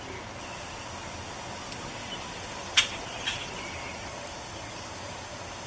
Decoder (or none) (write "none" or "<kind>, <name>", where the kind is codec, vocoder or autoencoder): none